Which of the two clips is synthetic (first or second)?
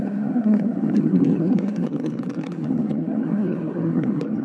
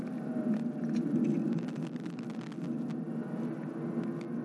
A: first